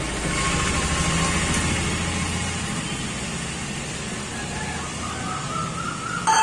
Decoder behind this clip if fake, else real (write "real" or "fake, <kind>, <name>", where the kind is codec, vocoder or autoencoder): real